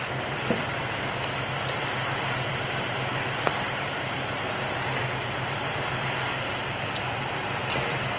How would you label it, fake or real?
fake